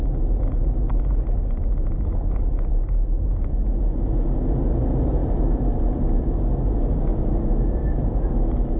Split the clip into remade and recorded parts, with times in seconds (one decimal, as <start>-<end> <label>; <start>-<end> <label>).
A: 0.0-5.2 recorded; 5.2-6.5 remade; 6.5-7.1 recorded; 7.1-8.3 remade; 8.3-8.8 recorded

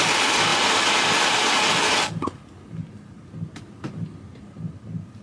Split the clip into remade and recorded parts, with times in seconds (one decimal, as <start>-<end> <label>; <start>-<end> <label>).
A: 0.0-5.2 recorded